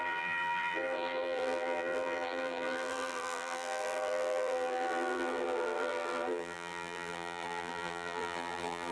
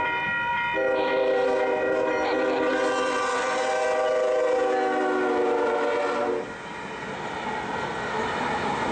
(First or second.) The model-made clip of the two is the first